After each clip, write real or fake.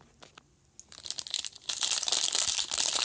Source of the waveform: real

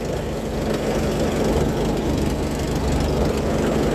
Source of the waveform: real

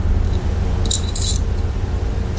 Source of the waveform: real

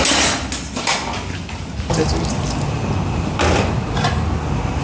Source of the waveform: real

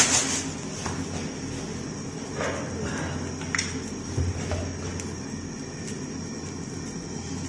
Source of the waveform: real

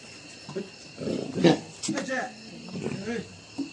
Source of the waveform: real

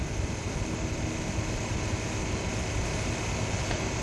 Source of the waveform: fake